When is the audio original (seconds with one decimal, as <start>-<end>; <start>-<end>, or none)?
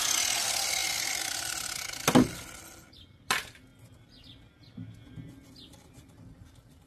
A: 0.0-6.9